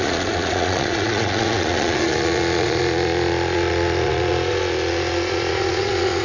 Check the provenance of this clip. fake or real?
fake